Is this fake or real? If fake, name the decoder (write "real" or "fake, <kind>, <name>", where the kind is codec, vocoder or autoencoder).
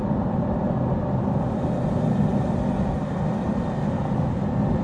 real